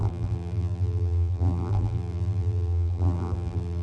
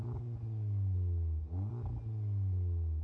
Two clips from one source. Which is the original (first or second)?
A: second